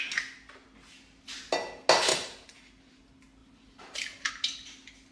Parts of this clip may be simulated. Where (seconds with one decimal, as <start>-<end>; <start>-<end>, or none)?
2.1-3.0; 3.4-4.3